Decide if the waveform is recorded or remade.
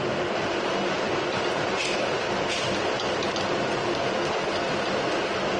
recorded